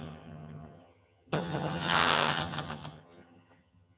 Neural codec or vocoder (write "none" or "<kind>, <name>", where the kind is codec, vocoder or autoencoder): vocoder, HiFi-GAN